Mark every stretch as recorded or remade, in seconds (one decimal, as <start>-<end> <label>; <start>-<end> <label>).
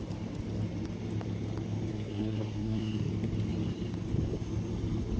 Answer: 0.0-1.9 recorded; 1.9-3.1 remade; 3.1-5.2 recorded